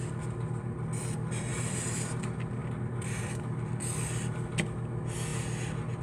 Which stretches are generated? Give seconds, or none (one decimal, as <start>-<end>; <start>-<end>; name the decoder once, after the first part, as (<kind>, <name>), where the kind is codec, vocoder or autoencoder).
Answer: 1.5-2.2 (vocoder, BigVGAN v2)